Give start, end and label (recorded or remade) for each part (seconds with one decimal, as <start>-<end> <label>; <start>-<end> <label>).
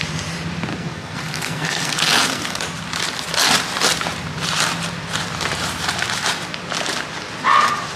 0.0-0.7 recorded; 0.7-2.6 remade; 2.6-8.0 recorded